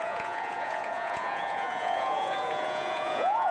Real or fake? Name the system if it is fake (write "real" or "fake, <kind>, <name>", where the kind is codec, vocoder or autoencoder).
fake, vocoder, Vocos